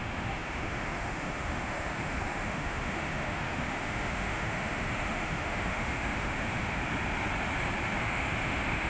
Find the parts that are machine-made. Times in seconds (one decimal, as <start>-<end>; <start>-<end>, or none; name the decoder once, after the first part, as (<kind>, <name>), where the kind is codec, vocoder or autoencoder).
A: 0.0-6.8 (autoencoder, DAC-VAE); 8.0-8.9